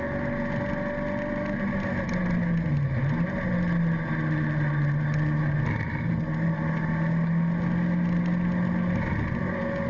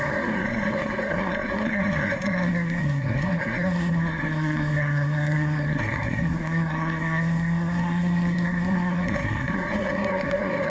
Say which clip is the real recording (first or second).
first